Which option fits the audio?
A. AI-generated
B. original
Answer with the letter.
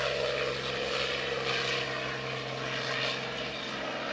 B